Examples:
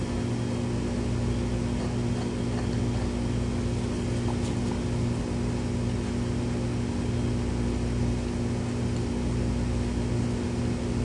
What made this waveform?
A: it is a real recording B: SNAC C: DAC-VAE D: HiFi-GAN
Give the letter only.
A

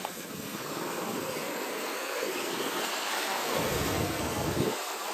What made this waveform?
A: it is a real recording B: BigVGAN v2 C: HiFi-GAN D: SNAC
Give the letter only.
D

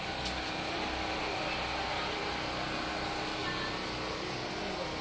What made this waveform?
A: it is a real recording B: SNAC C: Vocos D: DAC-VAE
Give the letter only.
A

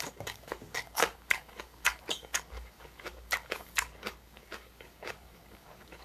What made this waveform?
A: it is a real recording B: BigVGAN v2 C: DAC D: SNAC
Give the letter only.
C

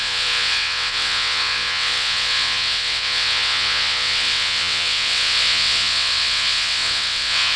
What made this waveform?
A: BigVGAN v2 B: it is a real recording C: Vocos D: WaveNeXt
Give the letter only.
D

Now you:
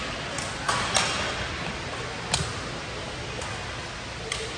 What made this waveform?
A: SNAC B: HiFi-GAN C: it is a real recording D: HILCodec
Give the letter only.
C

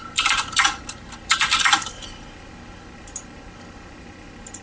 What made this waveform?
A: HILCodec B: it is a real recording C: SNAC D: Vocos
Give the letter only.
B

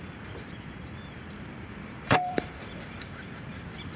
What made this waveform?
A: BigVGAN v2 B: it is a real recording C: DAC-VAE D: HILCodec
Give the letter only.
A